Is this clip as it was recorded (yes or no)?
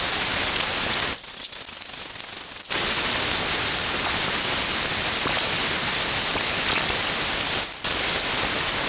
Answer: yes